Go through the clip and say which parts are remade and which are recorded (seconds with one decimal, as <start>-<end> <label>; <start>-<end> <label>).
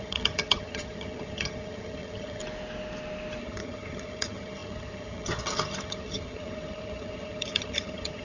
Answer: 0.0-2.4 remade; 2.4-3.4 recorded; 3.4-8.2 remade